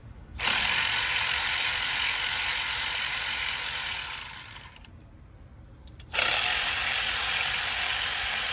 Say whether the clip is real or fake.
real